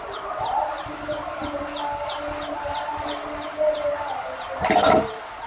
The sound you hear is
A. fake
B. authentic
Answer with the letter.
B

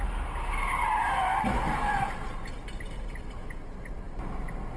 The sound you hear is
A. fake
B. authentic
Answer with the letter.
B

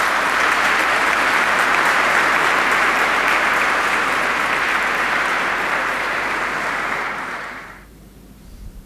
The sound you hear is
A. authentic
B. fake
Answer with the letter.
B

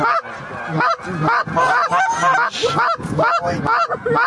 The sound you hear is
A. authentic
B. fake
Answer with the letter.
A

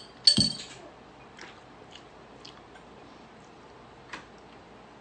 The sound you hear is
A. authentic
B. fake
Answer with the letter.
A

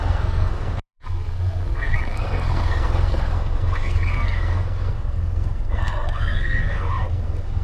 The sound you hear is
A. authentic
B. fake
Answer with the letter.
B